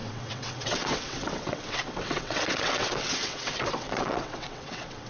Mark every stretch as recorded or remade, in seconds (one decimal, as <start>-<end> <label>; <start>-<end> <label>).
0.0-5.1 remade

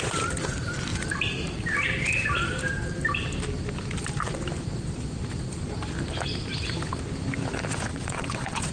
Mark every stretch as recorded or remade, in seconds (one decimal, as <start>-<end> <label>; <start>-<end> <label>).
0.0-7.9 recorded; 7.9-8.7 remade

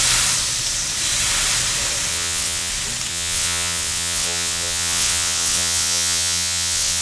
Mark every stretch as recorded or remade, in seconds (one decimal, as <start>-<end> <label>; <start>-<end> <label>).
0.0-2.1 recorded; 2.1-2.7 remade; 2.7-3.1 recorded; 3.1-7.0 remade